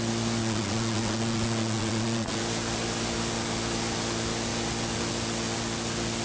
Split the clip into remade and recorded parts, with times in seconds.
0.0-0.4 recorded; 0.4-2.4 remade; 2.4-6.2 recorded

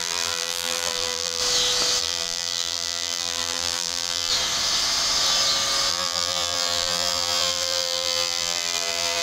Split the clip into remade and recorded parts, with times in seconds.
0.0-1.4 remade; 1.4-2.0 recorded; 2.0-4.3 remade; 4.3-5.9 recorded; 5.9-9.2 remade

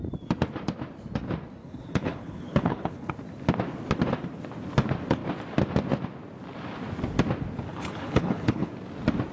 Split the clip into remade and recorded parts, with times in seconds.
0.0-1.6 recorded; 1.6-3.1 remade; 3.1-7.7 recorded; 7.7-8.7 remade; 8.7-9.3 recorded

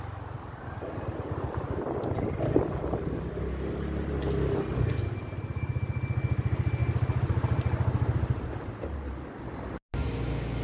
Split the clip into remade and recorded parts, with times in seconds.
0.0-10.6 recorded

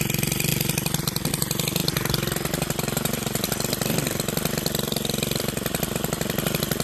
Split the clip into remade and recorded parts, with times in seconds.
0.0-0.5 remade; 0.5-1.0 recorded; 1.0-6.8 remade

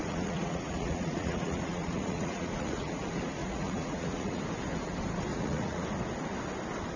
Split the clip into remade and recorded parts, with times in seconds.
0.0-3.0 remade; 3.0-3.4 recorded; 3.4-4.4 remade; 4.4-5.3 recorded; 5.3-5.8 remade; 5.8-7.0 recorded

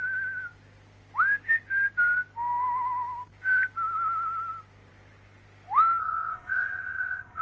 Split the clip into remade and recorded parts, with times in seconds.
0.0-6.0 recorded; 6.0-7.4 remade